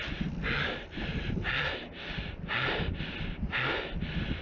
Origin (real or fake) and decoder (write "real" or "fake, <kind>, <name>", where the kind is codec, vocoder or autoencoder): real